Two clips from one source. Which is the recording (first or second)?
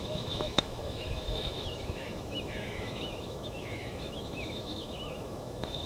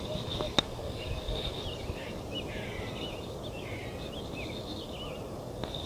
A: second